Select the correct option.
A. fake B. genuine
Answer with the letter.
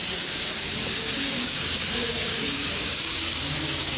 A